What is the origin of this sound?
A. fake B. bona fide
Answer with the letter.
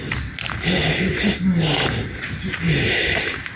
B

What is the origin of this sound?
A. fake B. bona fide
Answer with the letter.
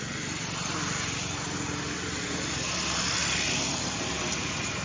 B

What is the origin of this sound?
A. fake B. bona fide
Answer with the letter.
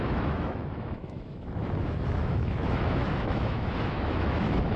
A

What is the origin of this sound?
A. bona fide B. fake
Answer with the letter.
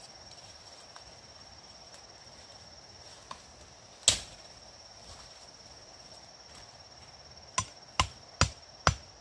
A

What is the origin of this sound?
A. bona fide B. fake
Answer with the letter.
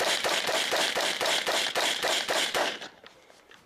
B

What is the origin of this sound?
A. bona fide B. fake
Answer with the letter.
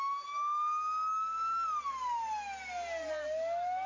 A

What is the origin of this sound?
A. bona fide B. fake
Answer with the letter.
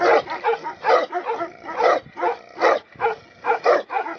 A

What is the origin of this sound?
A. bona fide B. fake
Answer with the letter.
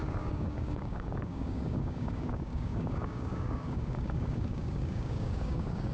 B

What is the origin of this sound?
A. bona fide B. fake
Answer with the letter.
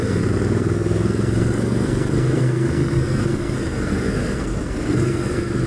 B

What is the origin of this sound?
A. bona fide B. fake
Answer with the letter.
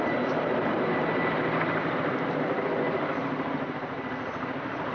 A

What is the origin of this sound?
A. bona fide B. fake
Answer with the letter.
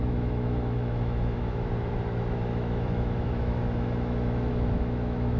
B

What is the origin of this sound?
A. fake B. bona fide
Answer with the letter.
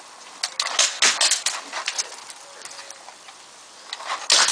B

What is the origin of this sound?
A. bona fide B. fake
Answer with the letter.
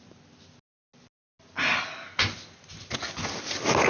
A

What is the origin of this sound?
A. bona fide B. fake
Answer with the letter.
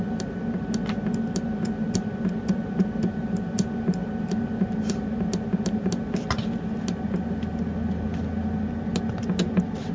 A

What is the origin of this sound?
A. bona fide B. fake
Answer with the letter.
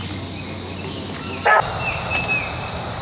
A